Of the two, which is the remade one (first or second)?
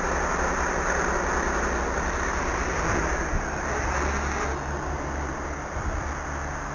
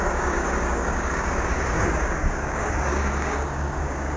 second